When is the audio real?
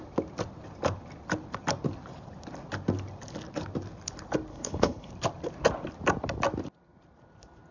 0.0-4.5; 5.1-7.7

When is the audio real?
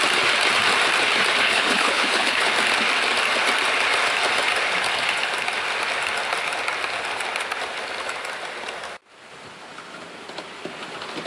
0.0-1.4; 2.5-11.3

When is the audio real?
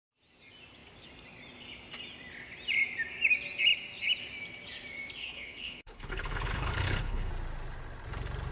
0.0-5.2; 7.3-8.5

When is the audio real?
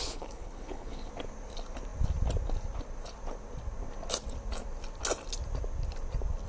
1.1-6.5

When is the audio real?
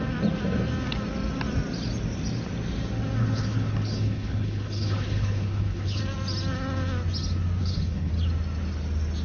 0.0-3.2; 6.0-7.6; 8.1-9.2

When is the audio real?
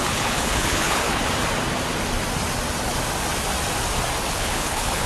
1.2-4.3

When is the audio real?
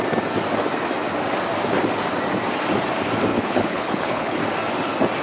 0.0-3.3; 4.4-5.2